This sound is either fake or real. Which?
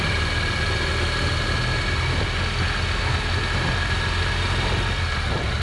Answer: real